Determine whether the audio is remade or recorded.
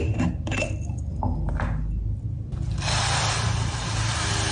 recorded